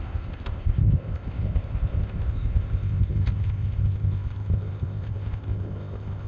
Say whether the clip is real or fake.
fake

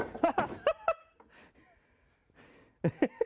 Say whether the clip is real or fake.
real